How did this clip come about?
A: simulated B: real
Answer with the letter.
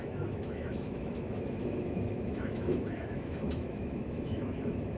A